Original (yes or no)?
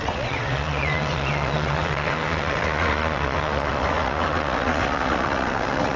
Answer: no